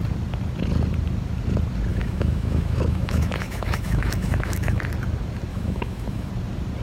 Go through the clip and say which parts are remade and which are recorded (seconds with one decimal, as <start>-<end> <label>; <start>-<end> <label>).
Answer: 0.0-1.9 recorded; 1.9-4.8 remade; 4.8-5.5 recorded; 5.5-6.3 remade; 6.3-6.8 recorded